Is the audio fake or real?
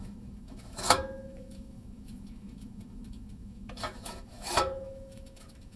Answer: fake